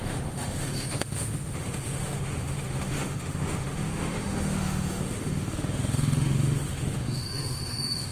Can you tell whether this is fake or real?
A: fake